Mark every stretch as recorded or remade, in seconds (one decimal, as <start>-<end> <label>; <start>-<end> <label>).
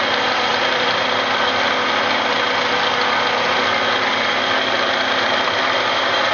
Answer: 0.0-6.3 recorded